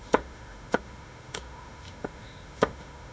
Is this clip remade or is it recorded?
remade